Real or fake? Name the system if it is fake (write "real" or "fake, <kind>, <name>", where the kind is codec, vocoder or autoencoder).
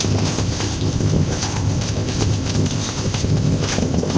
fake, codec, ZipCodec